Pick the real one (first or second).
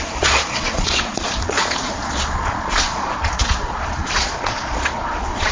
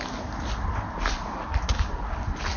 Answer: second